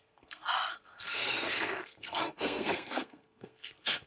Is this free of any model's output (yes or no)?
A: no